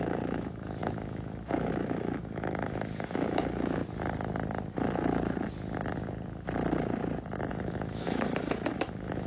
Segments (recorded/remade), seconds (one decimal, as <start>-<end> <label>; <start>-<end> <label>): 0.0-3.8 remade; 3.8-7.5 recorded; 7.5-9.3 remade